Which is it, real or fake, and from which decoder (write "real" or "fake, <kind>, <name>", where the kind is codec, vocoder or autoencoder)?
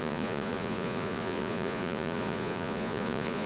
fake, vocoder, Vocos